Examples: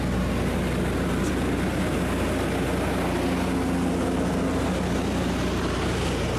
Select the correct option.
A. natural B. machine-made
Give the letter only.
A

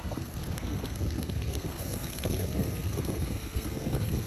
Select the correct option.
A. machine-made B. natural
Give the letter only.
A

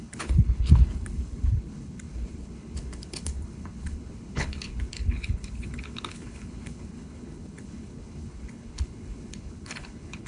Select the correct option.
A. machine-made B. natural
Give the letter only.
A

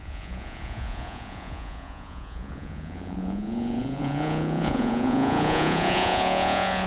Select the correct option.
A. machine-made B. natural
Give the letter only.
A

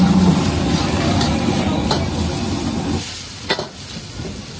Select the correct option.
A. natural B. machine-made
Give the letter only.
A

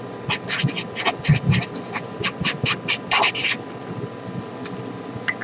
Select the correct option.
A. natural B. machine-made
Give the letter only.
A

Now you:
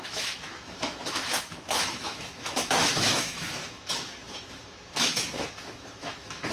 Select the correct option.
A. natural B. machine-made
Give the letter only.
B